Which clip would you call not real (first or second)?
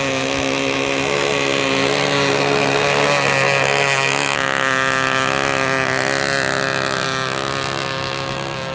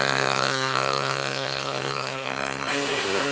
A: second